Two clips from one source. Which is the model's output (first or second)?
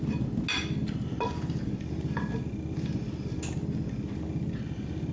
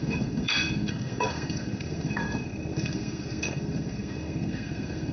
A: second